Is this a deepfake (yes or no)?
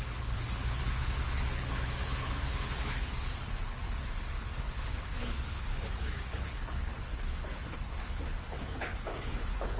yes